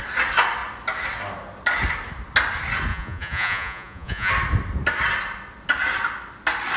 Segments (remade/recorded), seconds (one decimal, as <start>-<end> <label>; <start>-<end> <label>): 0.0-2.9 recorded; 2.9-4.3 remade; 4.3-6.8 recorded